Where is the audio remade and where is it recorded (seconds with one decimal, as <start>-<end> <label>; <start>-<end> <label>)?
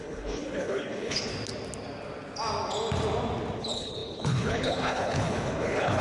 0.0-1.3 remade; 1.3-3.6 recorded; 3.6-6.0 remade